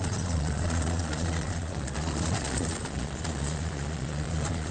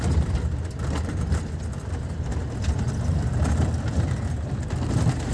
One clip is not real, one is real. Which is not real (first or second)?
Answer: first